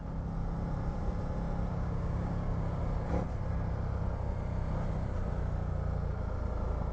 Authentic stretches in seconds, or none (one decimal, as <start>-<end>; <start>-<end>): 0.0-1.7; 2.8-6.9